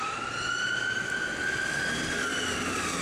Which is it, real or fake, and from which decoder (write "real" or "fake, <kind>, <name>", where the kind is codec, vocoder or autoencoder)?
real